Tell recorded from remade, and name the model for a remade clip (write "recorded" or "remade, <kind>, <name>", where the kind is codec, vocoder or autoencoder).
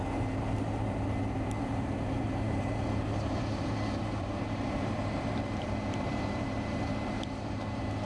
remade, vocoder, BigVGAN v2